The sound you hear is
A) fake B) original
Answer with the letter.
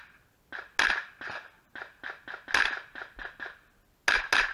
B